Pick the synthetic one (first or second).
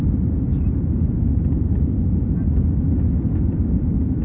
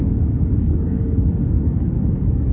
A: second